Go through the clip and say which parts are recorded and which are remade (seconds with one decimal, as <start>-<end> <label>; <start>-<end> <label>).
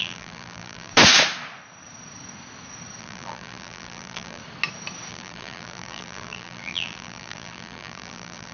0.0-0.9 remade; 0.9-3.0 recorded; 3.0-4.4 remade; 4.4-5.1 recorded; 5.1-8.5 remade